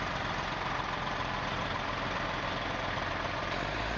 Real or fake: real